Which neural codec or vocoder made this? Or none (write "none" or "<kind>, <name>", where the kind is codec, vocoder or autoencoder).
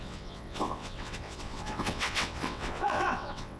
vocoder, WaveNeXt